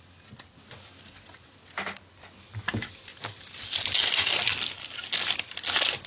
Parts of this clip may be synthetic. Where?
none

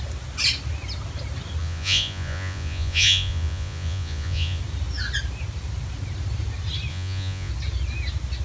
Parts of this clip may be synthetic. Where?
1.6-4.6 (vocoder, Vocos); 6.9-7.5

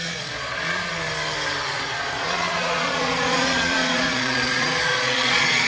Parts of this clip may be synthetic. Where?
0.0-0.9 (vocoder, Vocos); 1.7-5.7

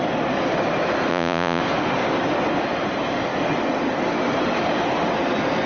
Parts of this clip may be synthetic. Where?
1.1-1.6 (vocoder, Vocos)